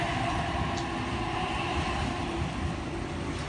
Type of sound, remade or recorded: recorded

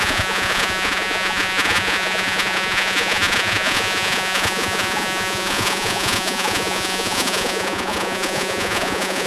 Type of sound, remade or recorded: remade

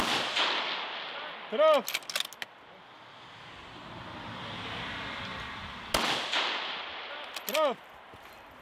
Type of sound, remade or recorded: recorded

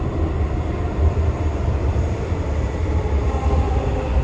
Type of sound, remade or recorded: recorded